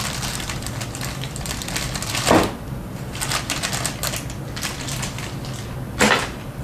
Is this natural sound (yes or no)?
yes